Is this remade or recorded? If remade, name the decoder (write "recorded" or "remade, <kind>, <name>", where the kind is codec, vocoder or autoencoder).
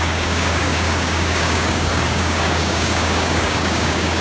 remade, codec, DAC